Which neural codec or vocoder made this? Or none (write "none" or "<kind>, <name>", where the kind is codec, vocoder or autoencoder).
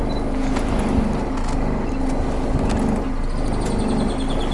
none